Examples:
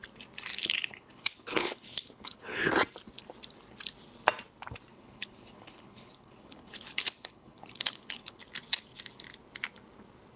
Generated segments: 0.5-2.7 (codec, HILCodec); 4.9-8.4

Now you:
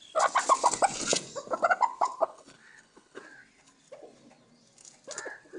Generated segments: 2.2-3.2 (codec, HILCodec)

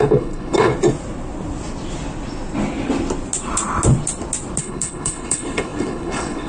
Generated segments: 0.0-0.7 (codec, HILCodec); 4.6-6.5

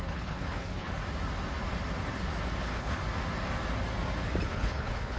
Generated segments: 0.0-1.0 (codec, HILCodec); 2.6-3.0; 4.5-5.2

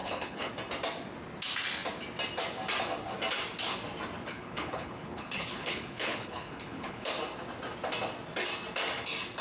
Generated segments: 0.0-0.5 (codec, HILCodec); 4.3-7.1

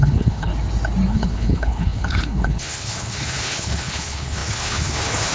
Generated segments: 0.0-0.5 (codec, HILCodec); 1.1-5.3

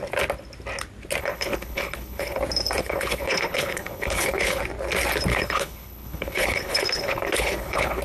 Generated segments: 1.2-2.4 (codec, HILCodec); 2.8-4.6; 5.3-8.0

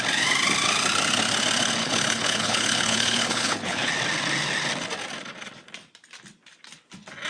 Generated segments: 1.8-3.9 (codec, HILCodec)